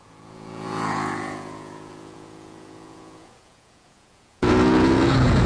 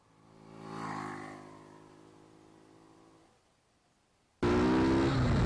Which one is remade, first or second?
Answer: first